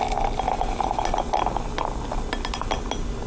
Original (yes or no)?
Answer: yes